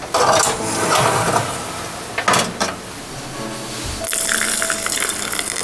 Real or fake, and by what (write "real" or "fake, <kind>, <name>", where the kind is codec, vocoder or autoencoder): real